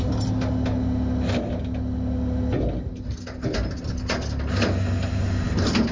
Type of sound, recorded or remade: recorded